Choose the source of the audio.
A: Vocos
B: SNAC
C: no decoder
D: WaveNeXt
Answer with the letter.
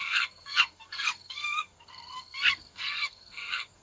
B